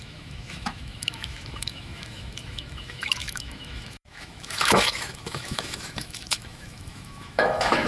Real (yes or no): no